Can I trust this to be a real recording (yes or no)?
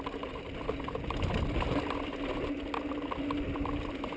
yes